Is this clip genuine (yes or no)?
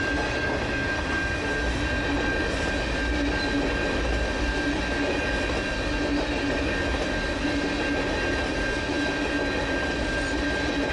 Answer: yes